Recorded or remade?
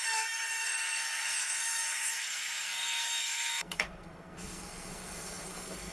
remade